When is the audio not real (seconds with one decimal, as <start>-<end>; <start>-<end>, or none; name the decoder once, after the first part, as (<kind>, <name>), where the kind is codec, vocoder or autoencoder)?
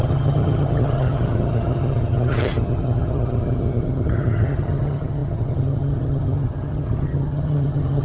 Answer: 0.0-8.0 (vocoder, HiFi-GAN)